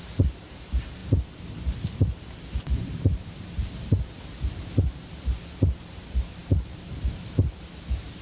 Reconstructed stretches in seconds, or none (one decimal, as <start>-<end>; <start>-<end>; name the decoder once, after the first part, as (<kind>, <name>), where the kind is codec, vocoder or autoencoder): none